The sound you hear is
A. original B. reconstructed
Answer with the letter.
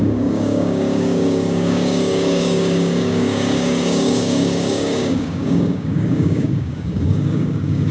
B